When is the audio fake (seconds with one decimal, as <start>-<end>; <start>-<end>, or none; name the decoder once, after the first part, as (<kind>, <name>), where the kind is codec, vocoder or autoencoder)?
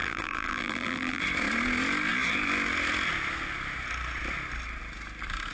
0.0-1.2 (vocoder, BigVGAN v2)